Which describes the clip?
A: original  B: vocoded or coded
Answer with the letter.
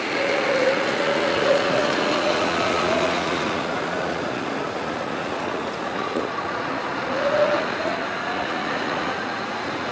B